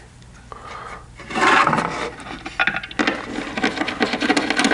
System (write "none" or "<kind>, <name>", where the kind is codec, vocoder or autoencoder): none